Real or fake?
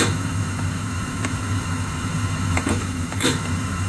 fake